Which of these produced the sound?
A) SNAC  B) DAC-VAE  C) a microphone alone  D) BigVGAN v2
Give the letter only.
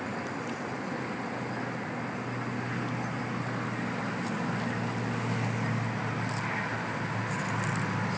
C